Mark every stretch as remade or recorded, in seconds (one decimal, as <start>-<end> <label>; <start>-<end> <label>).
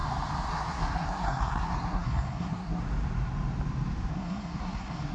0.0-0.5 recorded; 0.5-2.8 remade; 2.8-4.1 recorded; 4.1-5.1 remade